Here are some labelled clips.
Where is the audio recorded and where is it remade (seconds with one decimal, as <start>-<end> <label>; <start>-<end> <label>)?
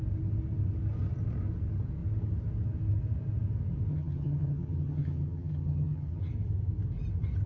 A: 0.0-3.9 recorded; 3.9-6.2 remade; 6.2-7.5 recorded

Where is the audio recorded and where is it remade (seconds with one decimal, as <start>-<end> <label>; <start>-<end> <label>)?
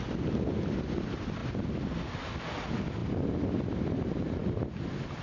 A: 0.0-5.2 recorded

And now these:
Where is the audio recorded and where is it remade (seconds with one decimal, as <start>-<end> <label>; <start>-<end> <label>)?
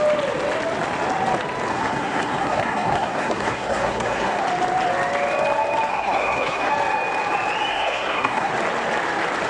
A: 0.0-1.7 recorded; 1.7-4.4 remade; 4.4-5.9 recorded; 5.9-6.7 remade; 6.7-7.7 recorded; 7.7-8.5 remade; 8.5-9.5 recorded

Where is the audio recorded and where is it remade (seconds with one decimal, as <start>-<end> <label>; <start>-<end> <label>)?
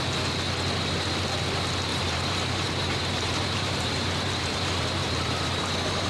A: 0.0-1.9 recorded; 1.9-5.6 remade; 5.6-6.1 recorded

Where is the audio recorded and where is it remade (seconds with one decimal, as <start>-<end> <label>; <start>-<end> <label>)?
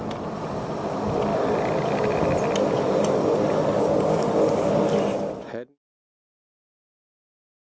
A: 0.0-7.7 recorded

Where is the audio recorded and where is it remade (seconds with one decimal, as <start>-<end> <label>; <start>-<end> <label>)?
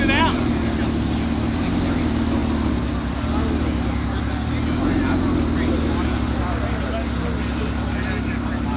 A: 0.0-8.8 recorded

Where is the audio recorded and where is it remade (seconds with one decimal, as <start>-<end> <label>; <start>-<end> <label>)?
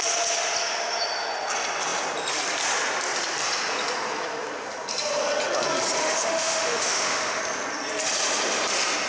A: 0.0-6.0 recorded; 6.0-7.4 remade; 7.4-9.1 recorded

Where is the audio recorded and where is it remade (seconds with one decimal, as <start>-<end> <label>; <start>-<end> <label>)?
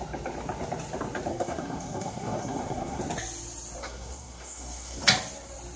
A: 0.0-1.3 recorded; 1.3-3.0 remade; 3.0-3.8 recorded; 3.8-5.0 remade; 5.0-5.8 recorded